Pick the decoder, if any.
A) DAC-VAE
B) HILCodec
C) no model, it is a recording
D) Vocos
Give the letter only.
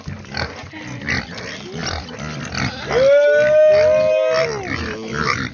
C